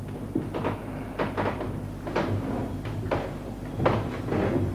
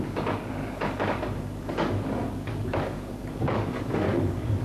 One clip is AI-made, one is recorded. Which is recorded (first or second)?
first